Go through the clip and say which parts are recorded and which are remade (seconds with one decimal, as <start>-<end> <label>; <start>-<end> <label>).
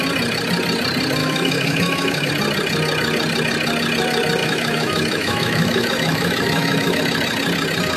0.0-1.2 recorded; 1.2-2.3 remade; 2.3-4.4 recorded; 4.4-7.0 remade; 7.0-8.0 recorded